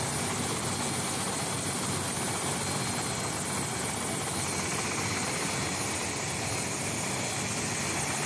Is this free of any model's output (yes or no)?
yes